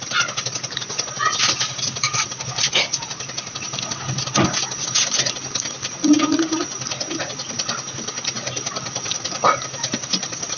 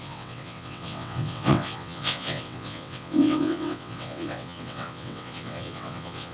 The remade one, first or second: second